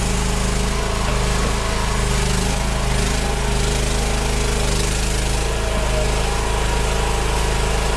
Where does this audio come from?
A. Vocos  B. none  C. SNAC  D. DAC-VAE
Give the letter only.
B